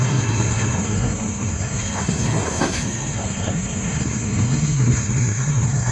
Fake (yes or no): yes